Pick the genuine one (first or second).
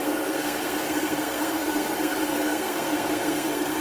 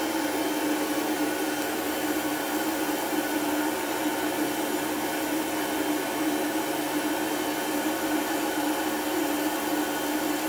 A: second